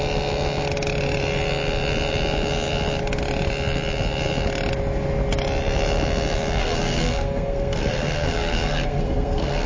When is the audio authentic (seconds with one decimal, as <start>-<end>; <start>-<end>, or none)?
0.0-6.6